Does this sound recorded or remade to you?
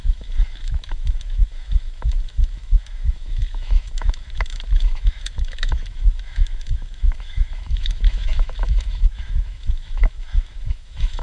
remade